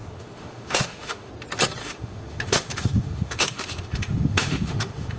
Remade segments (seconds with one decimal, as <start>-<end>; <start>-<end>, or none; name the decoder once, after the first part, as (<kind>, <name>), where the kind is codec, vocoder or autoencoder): 0.0-1.3 (autoencoder, DAC-VAE); 1.8-5.2